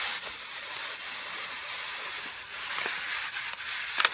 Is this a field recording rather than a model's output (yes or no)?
yes